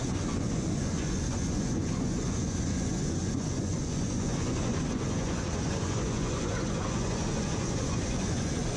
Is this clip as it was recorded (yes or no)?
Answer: no